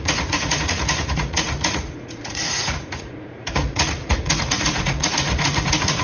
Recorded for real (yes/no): no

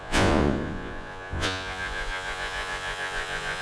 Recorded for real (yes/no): no